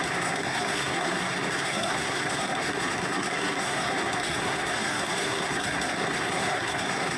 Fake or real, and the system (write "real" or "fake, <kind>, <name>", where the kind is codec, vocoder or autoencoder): fake, codec, SNAC